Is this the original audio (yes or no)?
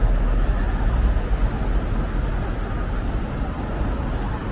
yes